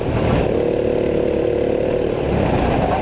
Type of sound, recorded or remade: recorded